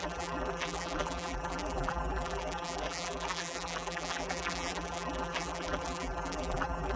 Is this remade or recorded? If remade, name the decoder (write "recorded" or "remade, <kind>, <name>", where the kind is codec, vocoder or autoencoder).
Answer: remade, vocoder, BigVGAN v2